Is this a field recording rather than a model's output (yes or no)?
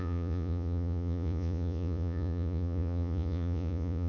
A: no